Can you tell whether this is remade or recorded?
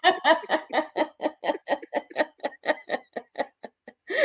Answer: recorded